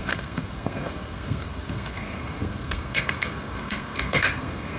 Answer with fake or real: fake